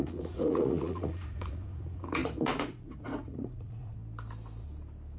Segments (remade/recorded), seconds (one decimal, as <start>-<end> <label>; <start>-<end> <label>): 0.0-4.0 remade; 4.0-5.2 recorded